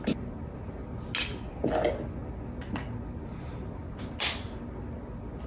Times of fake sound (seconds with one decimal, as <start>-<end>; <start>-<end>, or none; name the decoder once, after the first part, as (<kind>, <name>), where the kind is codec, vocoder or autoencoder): none